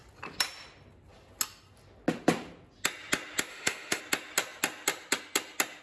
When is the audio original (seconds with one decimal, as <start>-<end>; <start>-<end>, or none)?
0.0-3.5; 4.0-5.8